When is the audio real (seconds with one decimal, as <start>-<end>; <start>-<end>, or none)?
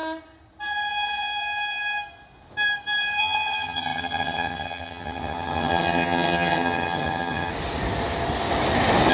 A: 0.0-3.2; 7.5-9.1